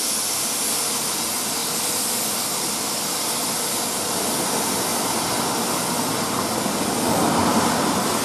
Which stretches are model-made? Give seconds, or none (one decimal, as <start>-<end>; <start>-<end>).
none